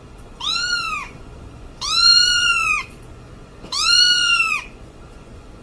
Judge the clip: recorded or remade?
remade